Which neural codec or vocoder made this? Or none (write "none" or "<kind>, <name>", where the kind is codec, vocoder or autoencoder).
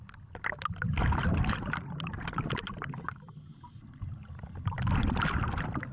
none